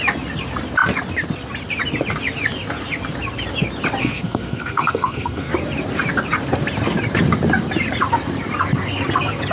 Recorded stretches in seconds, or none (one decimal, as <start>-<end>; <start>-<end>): 0.0-4.0; 5.5-9.5